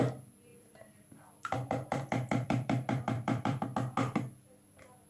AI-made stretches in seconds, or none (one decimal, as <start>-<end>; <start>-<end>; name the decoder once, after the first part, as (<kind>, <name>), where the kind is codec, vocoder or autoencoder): 0.5-3.6 (vocoder, BigVGAN v2)